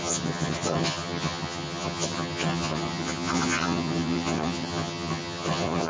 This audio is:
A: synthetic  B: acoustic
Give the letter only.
A